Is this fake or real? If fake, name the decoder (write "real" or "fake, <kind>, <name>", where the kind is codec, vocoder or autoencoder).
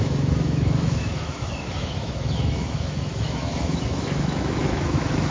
fake, autoencoder, DAC-VAE